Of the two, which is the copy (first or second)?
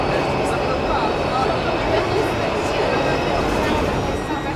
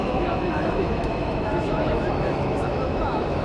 second